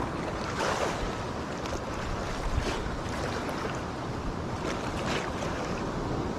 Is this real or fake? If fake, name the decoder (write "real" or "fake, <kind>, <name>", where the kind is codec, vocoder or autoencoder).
real